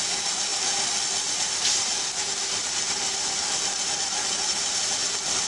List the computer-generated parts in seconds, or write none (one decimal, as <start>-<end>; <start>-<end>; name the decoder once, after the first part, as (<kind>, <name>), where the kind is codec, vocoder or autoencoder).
none